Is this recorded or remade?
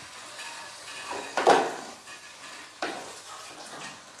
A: remade